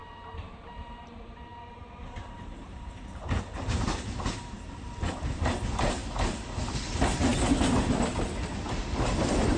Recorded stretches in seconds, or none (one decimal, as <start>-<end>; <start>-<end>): 6.0-6.6; 7.3-9.2